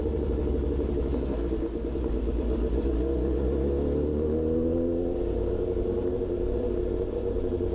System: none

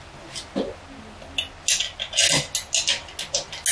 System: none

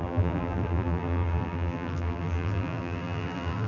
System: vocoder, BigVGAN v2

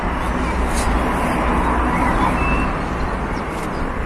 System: none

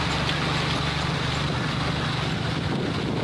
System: none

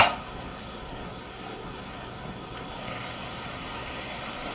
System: codec, SNAC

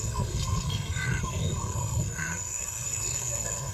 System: codec, SNAC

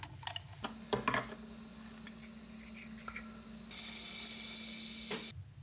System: none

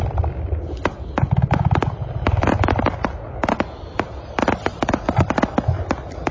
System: none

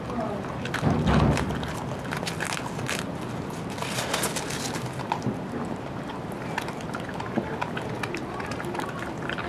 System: none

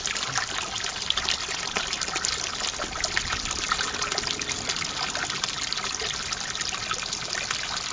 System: none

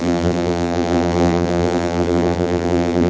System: vocoder, BigVGAN v2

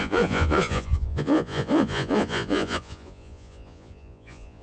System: vocoder, Vocos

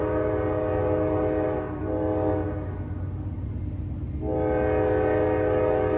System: none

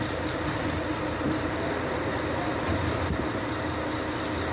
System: none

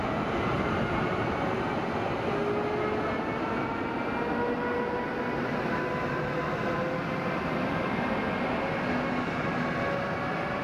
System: none